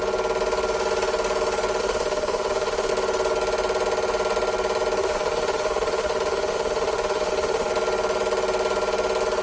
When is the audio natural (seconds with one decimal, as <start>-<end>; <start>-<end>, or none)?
0.0-1.8; 2.9-5.0; 7.7-9.4